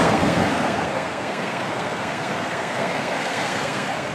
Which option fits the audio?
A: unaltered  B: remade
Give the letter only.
B